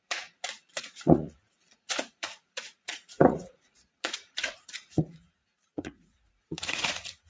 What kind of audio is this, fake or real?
fake